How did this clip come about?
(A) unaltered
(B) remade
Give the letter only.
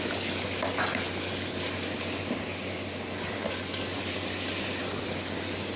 A